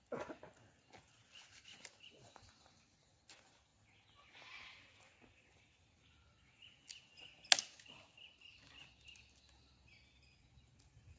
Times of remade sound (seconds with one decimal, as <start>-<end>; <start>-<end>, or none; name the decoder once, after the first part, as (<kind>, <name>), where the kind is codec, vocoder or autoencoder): none